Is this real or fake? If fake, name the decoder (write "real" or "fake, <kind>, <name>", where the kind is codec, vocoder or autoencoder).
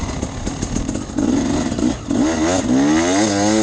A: real